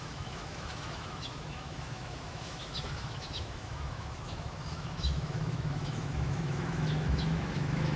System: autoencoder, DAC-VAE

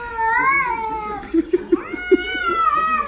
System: none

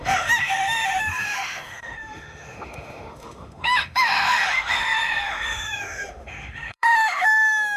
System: autoencoder, DAC-VAE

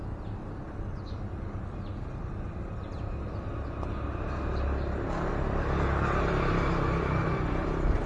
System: none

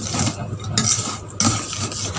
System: none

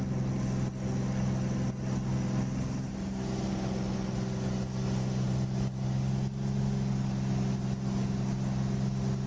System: none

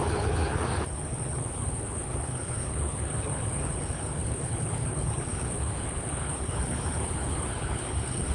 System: codec, HILCodec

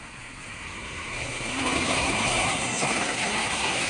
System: codec, SNAC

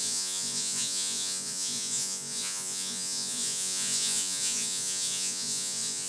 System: vocoder, Vocos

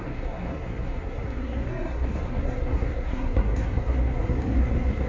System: codec, SNAC